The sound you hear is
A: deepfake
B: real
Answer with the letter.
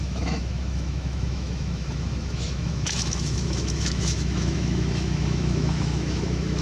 A